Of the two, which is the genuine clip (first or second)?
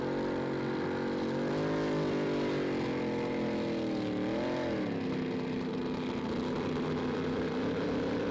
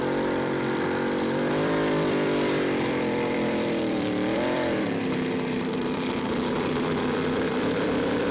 first